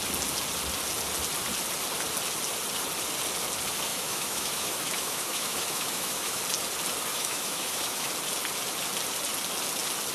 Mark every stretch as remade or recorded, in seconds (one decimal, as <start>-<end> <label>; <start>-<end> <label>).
0.0-3.9 recorded; 3.9-6.4 remade; 6.4-7.1 recorded; 7.1-8.1 remade; 8.1-10.1 recorded